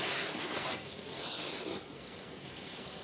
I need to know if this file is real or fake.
fake